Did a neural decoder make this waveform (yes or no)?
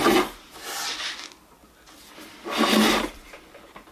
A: no